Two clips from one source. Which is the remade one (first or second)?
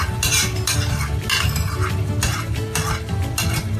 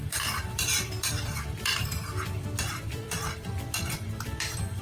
second